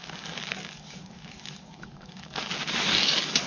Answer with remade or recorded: remade